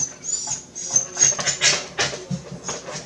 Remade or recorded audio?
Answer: recorded